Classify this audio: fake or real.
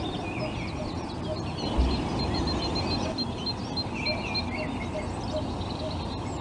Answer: real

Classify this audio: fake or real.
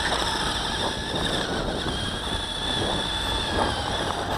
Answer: real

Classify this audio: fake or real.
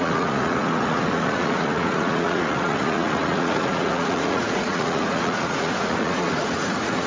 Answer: fake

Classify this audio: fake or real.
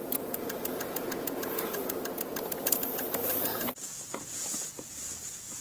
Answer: fake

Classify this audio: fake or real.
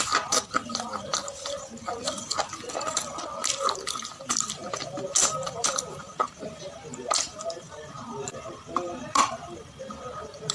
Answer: real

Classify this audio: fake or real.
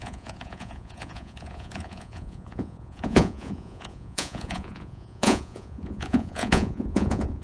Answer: fake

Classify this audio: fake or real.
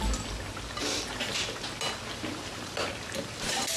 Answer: real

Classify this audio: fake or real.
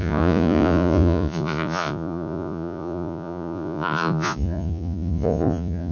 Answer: fake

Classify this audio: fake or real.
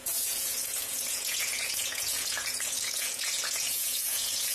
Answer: fake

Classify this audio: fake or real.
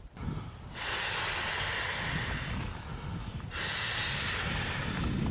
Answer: real